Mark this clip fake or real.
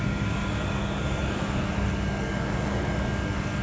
fake